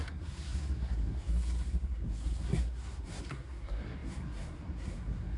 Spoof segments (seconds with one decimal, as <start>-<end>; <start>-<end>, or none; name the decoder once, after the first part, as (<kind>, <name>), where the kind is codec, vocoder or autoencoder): 0.0-5.4 (codec, SNAC)